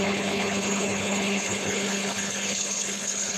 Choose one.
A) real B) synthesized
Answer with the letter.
B